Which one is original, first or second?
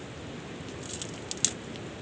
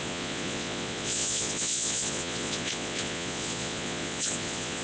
first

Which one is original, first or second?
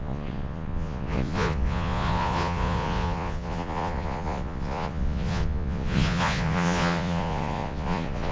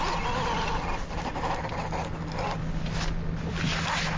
second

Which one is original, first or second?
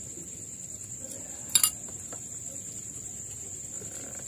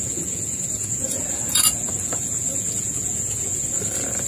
first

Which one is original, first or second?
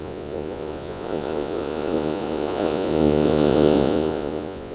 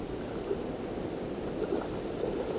second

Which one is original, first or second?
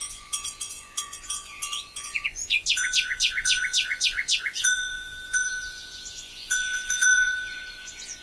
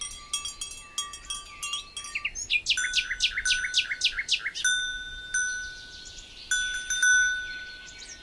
second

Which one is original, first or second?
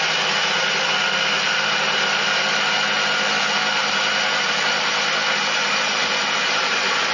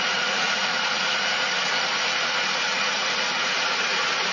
first